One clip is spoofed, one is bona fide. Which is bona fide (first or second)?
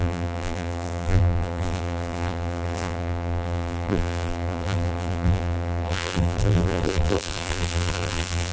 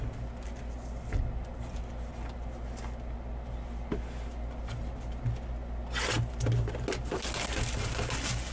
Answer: second